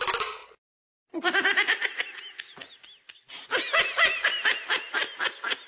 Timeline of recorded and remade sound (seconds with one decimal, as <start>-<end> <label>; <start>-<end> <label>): 0.0-0.4 recorded; 0.4-1.8 remade; 1.8-5.7 recorded